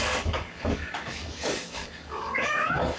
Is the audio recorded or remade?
remade